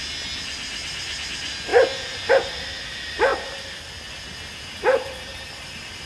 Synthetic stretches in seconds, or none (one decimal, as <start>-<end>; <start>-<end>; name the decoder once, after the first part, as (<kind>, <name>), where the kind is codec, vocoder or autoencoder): 1.7-2.3 (vocoder, BigVGAN v2); 3.3-4.1